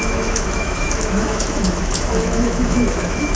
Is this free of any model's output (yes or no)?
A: no